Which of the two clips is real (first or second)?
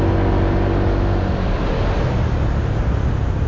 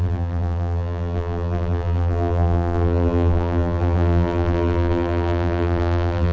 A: first